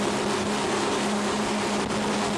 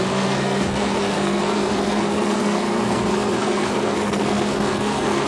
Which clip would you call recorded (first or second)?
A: first